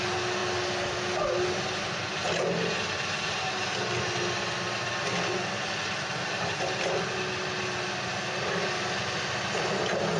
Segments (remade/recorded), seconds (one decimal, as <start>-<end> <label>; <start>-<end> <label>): 0.0-10.2 recorded